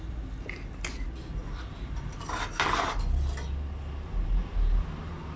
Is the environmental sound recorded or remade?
recorded